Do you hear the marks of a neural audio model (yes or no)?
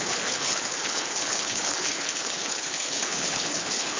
yes